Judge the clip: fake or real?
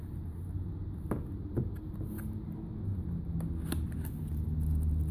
real